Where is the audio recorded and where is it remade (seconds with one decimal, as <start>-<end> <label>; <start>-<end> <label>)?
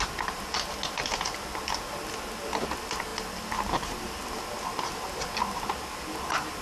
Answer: 0.0-6.6 recorded